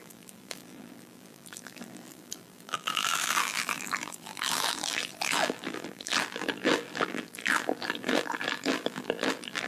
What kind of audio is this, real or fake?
fake